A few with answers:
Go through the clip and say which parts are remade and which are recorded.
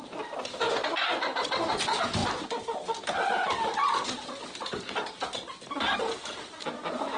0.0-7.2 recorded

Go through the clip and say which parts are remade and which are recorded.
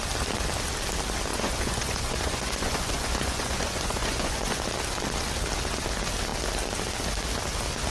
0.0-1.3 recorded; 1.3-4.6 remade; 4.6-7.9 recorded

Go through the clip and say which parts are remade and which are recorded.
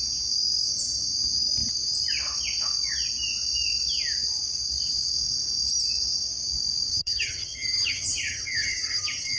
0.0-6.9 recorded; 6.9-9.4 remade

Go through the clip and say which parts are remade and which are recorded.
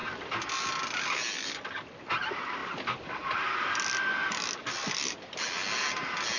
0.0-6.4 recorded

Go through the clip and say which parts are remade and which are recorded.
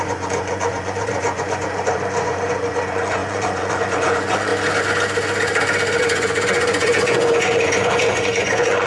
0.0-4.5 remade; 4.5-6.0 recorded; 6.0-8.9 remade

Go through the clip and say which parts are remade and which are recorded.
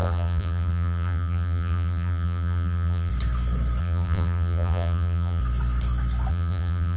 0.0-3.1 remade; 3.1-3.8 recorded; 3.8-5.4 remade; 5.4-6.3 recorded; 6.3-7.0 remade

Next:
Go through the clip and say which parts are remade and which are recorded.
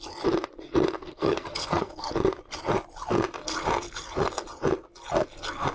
0.0-1.0 recorded; 1.0-2.1 remade; 2.1-5.7 recorded